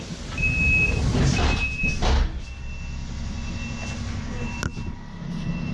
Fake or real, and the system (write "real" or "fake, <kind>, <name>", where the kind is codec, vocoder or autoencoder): real